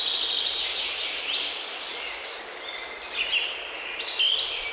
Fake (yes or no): no